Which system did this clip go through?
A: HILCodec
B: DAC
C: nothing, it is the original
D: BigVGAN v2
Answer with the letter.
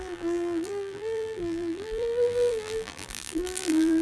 D